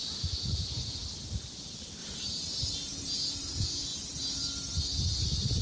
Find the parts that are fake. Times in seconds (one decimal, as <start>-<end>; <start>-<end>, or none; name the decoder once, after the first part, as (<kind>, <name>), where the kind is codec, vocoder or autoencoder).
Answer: 0.0-0.9 (vocoder, Vocos)